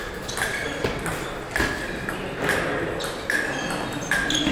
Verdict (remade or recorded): recorded